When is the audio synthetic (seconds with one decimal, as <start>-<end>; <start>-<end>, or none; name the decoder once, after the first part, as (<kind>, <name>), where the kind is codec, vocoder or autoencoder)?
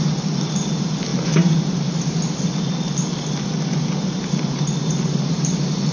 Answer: none